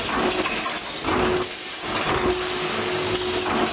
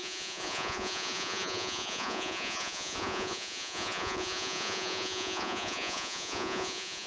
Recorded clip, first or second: first